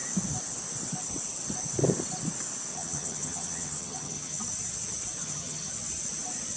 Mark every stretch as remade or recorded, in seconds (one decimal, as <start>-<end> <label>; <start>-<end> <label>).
0.0-2.7 recorded; 2.7-4.4 remade; 4.4-5.2 recorded; 5.2-5.7 remade; 5.7-6.6 recorded